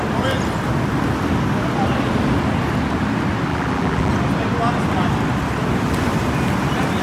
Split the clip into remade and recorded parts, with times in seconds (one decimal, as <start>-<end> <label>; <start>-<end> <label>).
0.0-3.5 recorded; 3.5-4.1 remade; 4.1-7.0 recorded